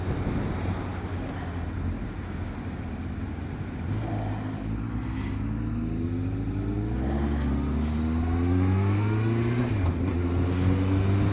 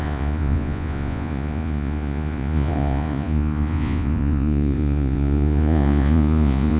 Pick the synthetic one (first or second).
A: second